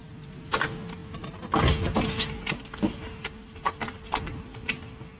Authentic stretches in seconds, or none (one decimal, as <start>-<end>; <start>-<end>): 0.0-5.2